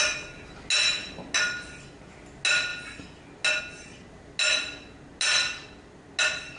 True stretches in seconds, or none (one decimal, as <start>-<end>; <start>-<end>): 0.0-6.6